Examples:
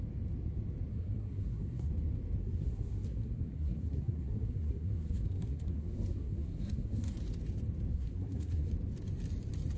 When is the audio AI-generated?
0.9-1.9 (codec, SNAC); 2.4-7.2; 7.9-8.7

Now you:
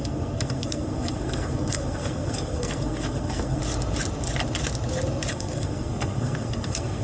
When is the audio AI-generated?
0.0-3.6 (codec, SNAC); 5.3-7.0

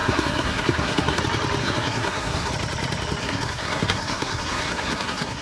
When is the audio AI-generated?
0.0-1.2 (codec, SNAC); 1.6-2.5; 3.2-5.4

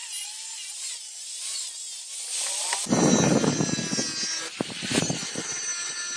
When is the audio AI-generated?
none

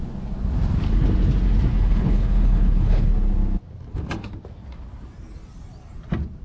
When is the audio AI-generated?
1.7-3.1 (codec, HILCodec)

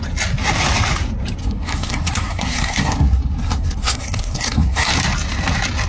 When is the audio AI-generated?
1.4-4.9 (codec, SNAC)

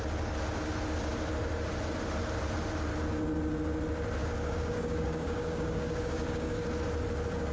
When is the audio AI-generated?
4.2-6.7 (codec, DAC)

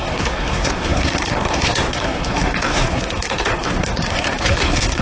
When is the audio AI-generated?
0.0-5.0 (codec, SNAC)